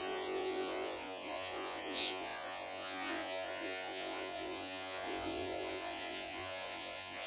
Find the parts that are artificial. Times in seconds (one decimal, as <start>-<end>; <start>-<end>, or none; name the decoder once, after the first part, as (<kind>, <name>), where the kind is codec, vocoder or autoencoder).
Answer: 0.0-7.3 (vocoder, Vocos)

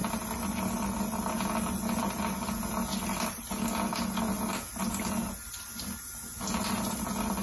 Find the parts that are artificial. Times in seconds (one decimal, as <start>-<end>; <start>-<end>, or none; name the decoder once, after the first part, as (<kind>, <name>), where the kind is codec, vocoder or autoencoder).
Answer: none

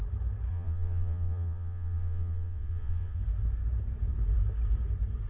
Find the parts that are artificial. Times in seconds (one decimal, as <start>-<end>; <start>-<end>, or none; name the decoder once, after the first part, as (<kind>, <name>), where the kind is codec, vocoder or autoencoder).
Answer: 0.5-3.2 (vocoder, Vocos)